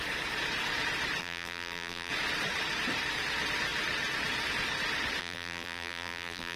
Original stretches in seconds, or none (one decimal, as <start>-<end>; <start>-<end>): 0.0-1.2; 2.1-5.2